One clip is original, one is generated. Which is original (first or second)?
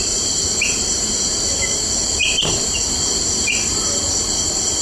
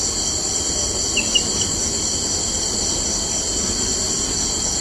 second